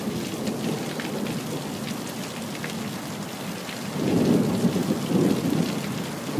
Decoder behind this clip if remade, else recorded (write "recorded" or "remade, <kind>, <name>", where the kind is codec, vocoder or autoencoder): recorded